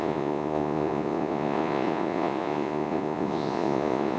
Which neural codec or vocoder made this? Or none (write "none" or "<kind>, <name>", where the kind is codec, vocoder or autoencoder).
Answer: vocoder, Vocos